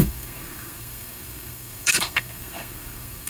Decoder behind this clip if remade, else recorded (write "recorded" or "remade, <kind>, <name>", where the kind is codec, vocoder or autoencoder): remade, codec, SNAC